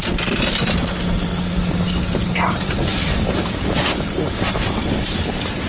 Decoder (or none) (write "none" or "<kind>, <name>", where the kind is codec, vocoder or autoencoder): none